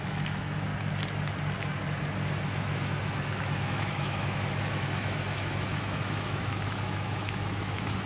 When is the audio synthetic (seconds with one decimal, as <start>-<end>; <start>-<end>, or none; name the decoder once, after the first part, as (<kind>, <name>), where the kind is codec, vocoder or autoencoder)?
0.0-0.7 (autoencoder, DAC-VAE); 2.3-8.1